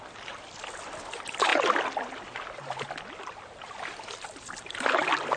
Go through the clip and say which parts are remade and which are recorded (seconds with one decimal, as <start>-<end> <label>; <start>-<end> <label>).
0.0-5.4 recorded